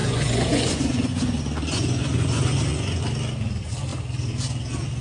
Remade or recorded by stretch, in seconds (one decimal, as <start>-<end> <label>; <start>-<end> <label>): 0.0-3.0 remade; 3.0-5.0 recorded

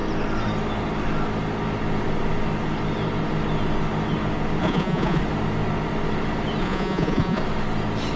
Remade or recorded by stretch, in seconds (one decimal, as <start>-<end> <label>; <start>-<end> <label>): 0.0-4.6 recorded; 4.6-5.2 remade; 5.2-6.6 recorded; 6.6-7.4 remade; 7.4-8.2 recorded

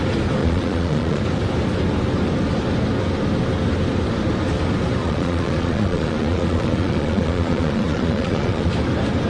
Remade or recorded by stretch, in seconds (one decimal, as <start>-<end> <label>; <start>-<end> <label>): 0.0-0.4 recorded; 0.4-1.2 remade; 1.2-5.0 recorded; 5.0-8.7 remade; 8.7-9.3 recorded

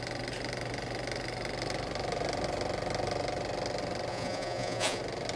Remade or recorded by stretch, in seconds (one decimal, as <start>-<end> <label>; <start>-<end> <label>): 0.0-4.1 recorded; 4.1-5.0 remade; 5.0-5.4 recorded

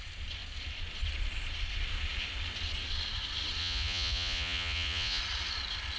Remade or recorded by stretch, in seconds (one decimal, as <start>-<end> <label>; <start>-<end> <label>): 0.0-3.6 recorded; 3.6-5.2 remade; 5.2-6.0 recorded

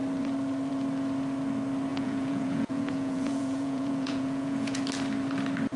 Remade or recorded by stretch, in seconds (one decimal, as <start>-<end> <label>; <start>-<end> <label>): 0.0-1.9 recorded; 1.9-4.8 remade; 4.8-5.8 recorded

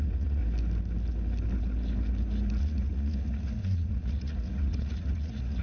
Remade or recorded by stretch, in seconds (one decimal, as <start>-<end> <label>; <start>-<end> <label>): 0.0-0.4 remade; 0.4-2.6 recorded; 2.6-5.6 remade

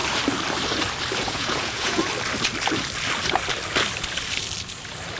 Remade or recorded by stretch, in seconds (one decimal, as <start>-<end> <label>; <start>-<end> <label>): 0.0-1.2 recorded; 1.2-2.0 remade; 2.0-5.2 recorded